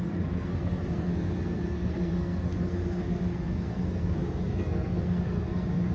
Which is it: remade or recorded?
remade